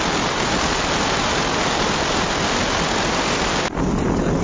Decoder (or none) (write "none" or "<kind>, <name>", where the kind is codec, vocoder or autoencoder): none